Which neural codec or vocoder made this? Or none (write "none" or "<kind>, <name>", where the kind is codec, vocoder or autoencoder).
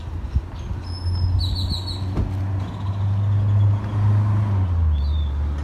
none